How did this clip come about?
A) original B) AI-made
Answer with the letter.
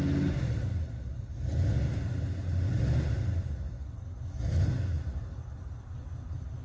A